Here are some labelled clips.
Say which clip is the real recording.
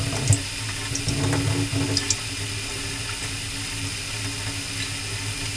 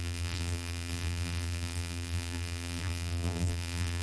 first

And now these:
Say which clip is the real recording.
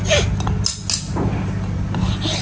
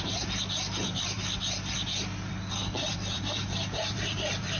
first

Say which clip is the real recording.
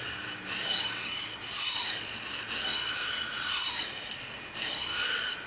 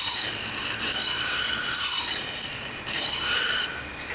first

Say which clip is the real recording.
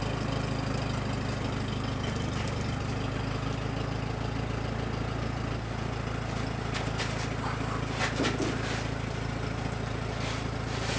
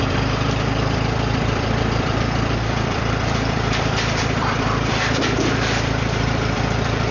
first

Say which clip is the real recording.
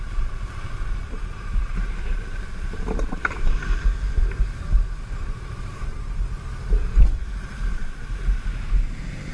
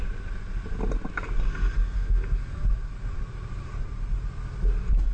second